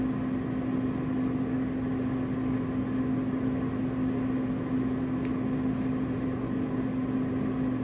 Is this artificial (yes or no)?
no